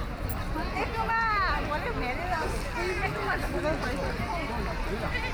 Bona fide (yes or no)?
yes